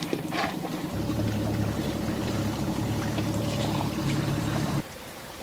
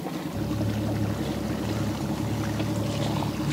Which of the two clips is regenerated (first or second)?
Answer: first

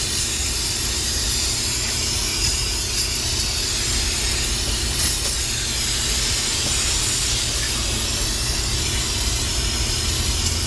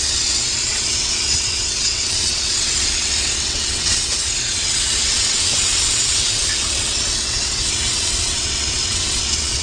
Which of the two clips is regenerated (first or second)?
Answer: second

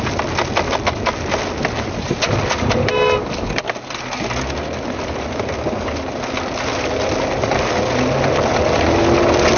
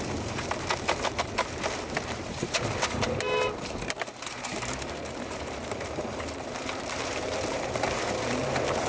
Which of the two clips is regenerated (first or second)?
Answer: second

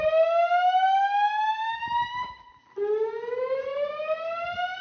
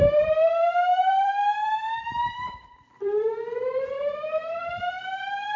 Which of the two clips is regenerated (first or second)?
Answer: second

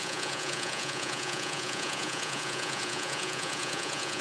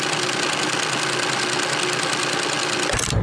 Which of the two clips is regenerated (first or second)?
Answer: first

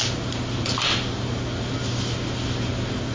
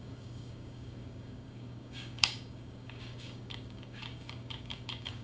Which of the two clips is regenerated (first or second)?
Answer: second